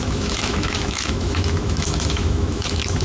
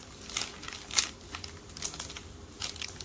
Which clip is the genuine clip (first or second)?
second